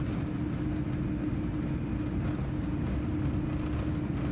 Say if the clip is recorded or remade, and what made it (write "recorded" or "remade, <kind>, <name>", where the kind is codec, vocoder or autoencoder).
recorded